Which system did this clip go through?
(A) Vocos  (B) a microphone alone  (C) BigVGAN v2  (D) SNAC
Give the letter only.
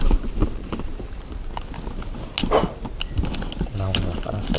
B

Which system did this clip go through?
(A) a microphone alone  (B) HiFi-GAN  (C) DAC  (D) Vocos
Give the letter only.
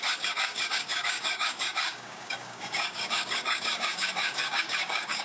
C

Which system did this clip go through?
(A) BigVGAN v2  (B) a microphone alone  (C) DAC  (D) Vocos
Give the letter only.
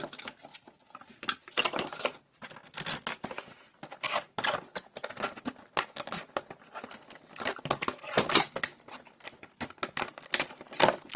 B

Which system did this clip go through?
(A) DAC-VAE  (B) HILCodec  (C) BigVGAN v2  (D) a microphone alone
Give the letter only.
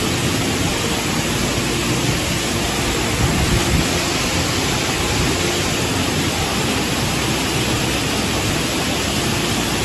D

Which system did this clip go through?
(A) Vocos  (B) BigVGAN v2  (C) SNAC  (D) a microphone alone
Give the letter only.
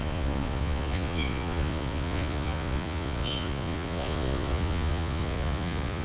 A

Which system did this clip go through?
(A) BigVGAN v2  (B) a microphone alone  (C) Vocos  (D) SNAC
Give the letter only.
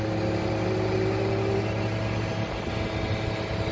B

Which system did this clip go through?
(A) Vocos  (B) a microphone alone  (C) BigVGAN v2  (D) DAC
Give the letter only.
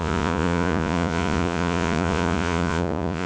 A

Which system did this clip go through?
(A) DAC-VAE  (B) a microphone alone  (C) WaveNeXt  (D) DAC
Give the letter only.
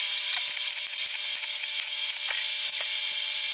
B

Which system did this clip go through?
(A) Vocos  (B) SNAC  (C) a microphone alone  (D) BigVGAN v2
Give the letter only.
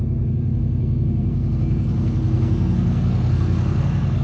B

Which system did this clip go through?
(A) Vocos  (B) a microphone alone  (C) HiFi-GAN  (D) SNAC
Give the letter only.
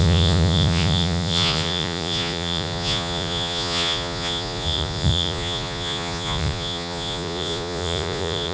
A